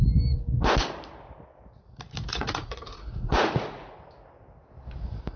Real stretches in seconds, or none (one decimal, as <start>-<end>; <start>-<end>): 0.0-2.3; 4.0-5.4

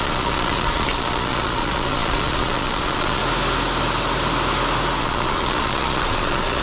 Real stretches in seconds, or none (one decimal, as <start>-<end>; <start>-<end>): 3.2-5.0

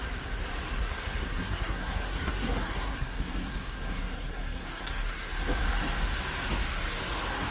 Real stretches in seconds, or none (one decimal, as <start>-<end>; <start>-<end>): 0.0-0.8; 5.3-7.5

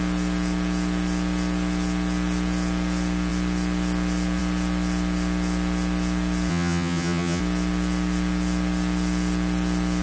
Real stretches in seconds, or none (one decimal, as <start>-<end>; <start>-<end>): 0.0-6.5; 7.4-10.0

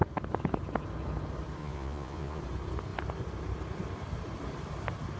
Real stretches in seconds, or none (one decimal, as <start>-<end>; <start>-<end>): 0.0-1.6; 2.4-5.2

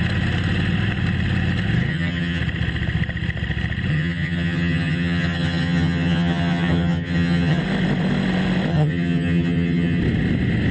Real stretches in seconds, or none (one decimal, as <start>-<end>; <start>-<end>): 0.0-1.9; 2.4-3.9; 7.6-8.7; 10.0-10.7